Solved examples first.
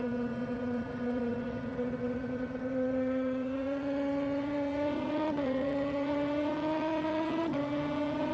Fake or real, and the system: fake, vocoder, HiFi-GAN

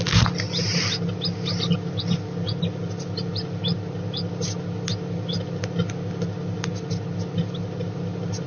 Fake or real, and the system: real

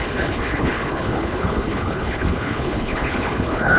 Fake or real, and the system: fake, codec, HILCodec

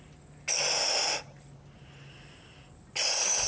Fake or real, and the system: real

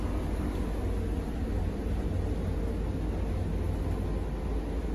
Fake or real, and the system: real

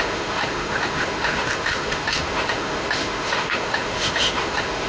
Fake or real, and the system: fake, autoencoder, DAC-VAE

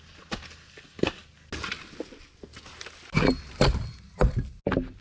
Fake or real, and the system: real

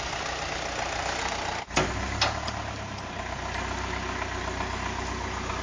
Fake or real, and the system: real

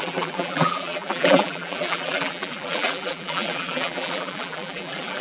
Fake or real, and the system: fake, vocoder, BigVGAN v2